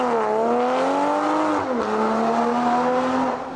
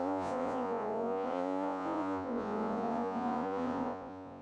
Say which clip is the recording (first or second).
first